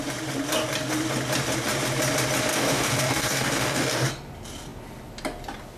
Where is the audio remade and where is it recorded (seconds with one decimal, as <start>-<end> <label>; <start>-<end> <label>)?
0.0-2.5 recorded; 2.5-4.1 remade; 4.1-5.8 recorded